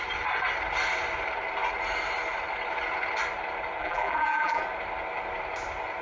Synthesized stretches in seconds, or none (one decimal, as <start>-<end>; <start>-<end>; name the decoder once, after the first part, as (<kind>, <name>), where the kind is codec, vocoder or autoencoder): 3.8-4.6 (vocoder, BigVGAN v2)